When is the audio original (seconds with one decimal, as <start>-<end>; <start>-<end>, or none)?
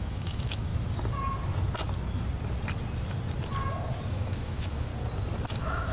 0.7-4.1; 4.9-5.5